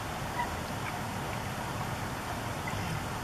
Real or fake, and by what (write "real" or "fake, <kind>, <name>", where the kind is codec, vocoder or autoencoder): real